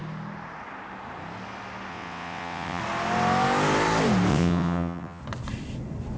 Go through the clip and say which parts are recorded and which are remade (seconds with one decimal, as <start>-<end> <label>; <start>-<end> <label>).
0.0-1.9 recorded; 1.9-2.8 remade; 2.8-4.3 recorded; 4.3-5.2 remade; 5.2-6.2 recorded